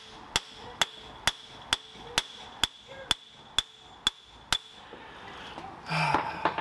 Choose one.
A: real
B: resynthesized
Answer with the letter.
A